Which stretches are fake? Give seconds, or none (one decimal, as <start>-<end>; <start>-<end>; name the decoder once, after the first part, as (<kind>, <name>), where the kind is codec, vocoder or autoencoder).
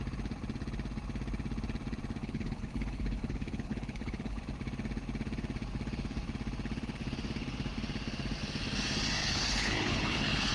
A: 2.2-4.4 (codec, HILCodec); 9.2-10.5